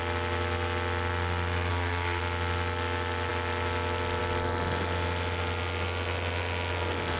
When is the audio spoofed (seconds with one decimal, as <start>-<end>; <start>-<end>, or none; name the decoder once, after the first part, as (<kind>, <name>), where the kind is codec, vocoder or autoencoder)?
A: 1.7-2.2 (codec, SNAC)